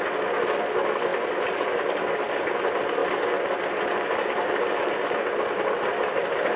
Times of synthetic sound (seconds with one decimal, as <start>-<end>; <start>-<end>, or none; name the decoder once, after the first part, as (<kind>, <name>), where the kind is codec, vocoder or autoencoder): none